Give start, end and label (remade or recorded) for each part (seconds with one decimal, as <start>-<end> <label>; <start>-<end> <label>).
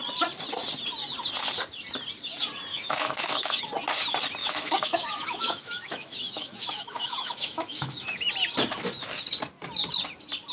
0.0-2.7 recorded; 2.7-3.6 remade; 3.6-4.4 recorded; 4.4-8.3 remade; 8.3-10.5 recorded